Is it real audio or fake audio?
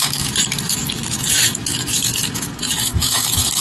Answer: fake